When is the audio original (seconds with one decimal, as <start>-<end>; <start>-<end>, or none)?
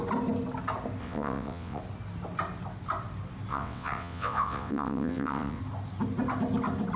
0.0-1.0; 1.8-3.5; 5.6-7.0